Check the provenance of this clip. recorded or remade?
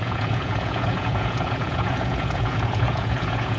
remade